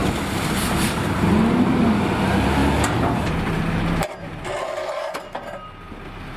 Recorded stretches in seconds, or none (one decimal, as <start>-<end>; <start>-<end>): 1.3-2.6; 5.1-6.4